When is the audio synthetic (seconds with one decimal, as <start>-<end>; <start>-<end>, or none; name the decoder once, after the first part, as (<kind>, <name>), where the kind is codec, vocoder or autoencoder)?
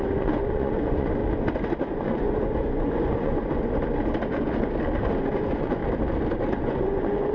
0.0-1.2 (vocoder, Vocos); 1.8-3.4; 5.2-5.8; 6.6-7.3